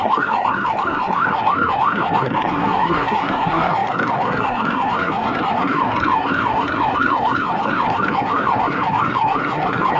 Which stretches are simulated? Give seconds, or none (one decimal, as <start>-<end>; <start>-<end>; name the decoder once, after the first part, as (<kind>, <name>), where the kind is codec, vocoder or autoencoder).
0.0-10.0 (codec, SNAC)